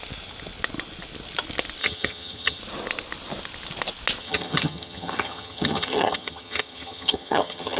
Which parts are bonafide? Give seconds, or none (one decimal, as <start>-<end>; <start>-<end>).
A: 0.0-1.8; 2.6-4.2